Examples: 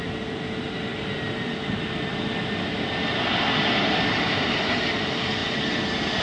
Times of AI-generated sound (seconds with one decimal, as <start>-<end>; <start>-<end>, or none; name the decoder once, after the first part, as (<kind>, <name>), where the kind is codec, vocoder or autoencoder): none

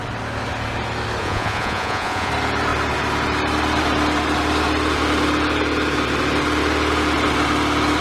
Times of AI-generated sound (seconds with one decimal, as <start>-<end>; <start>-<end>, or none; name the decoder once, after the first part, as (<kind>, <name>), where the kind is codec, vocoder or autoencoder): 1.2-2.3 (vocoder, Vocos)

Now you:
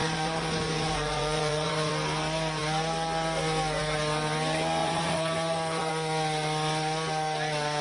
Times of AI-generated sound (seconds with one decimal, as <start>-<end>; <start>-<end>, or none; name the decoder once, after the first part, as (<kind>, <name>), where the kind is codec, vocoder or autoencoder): 0.0-1.9 (vocoder, Vocos); 4.8-5.9